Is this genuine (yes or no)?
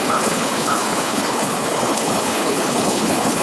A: no